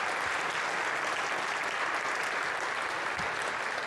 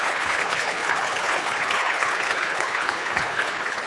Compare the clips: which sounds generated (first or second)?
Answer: second